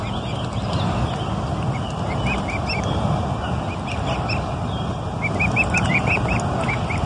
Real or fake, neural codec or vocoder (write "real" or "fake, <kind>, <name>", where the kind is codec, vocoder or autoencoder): real